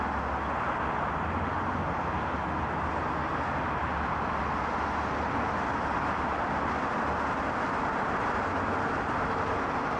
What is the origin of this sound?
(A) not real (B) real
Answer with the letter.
B